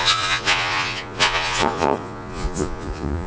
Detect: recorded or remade remade